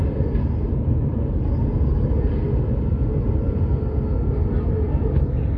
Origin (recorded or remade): recorded